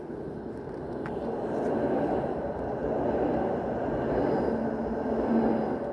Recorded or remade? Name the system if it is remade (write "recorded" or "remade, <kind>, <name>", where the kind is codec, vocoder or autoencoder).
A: recorded